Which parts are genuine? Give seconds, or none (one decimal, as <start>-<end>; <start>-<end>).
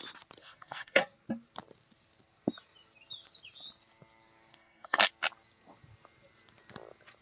0.0-0.4; 1.0-4.5; 5.1-7.2